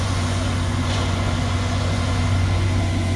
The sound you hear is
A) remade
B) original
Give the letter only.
A